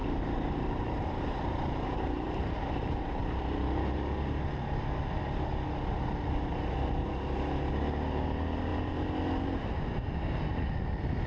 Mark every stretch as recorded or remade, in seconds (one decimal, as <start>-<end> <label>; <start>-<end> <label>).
0.0-3.2 remade; 3.2-11.3 recorded